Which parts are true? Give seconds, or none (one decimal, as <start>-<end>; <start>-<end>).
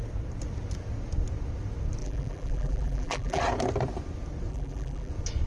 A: 0.0-2.0; 3.4-4.5; 5.1-5.5